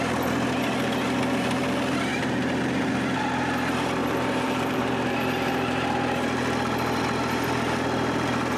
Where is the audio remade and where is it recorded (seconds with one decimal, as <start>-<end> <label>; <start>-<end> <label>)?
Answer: 0.0-2.1 recorded; 2.1-2.9 remade; 2.9-4.0 recorded; 4.0-5.9 remade; 5.9-8.6 recorded